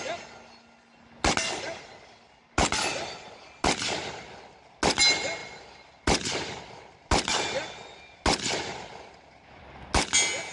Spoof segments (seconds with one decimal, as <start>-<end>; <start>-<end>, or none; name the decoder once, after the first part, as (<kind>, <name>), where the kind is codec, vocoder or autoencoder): none